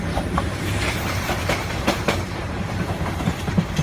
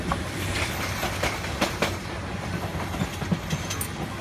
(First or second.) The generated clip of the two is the first